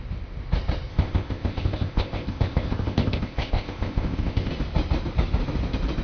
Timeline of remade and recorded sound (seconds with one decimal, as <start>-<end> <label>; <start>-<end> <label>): 0.0-0.9 recorded; 0.9-4.5 remade; 4.5-6.0 recorded